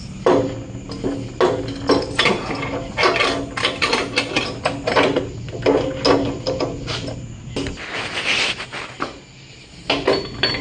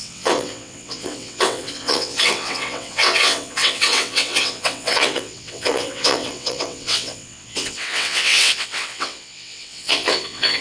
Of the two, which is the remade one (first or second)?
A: second